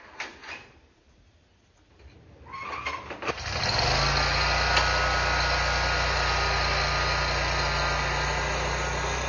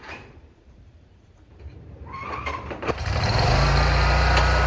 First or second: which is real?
first